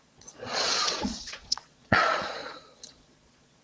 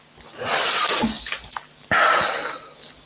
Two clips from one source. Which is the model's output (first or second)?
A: first